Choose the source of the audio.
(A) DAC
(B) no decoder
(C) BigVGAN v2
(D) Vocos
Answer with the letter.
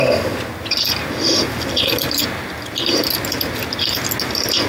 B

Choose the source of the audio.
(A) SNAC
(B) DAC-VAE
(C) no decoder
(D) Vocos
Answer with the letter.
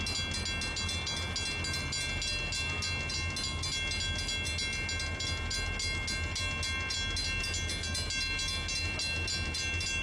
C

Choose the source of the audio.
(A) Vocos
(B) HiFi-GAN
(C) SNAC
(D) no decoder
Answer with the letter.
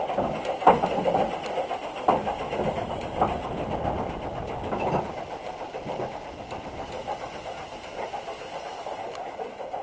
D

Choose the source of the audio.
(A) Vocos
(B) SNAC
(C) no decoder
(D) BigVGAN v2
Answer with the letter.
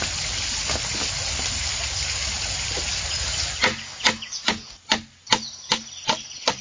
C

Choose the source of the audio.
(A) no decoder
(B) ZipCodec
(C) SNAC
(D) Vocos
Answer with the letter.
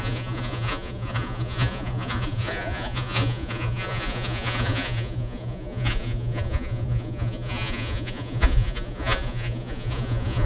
D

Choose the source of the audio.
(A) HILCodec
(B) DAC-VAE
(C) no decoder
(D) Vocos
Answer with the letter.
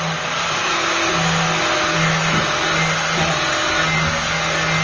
C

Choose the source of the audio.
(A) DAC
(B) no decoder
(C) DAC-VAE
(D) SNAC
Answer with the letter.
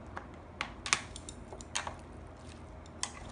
B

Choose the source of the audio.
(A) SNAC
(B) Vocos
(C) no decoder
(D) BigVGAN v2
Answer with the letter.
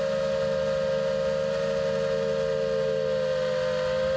C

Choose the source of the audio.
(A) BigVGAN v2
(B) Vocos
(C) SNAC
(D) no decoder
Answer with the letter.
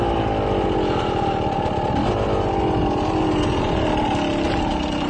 D